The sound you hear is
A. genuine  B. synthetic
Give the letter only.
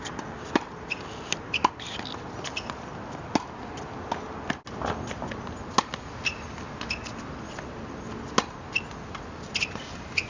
A